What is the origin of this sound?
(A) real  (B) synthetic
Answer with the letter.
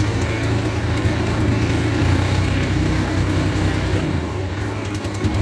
B